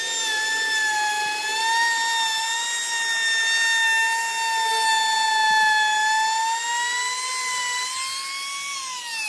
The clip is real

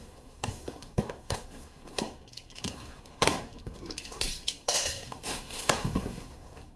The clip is fake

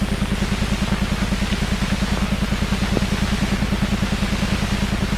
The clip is real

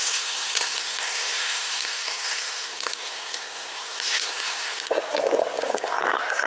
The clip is fake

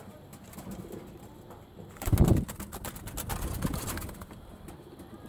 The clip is real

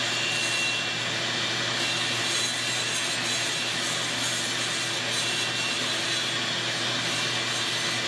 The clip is real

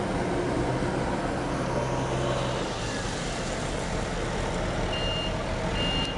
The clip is real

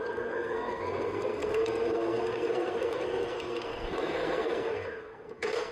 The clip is fake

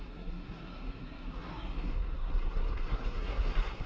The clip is fake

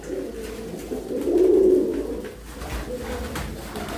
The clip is real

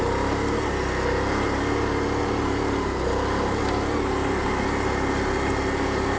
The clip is real